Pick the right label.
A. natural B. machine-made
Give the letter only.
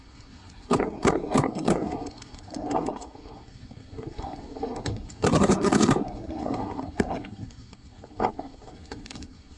B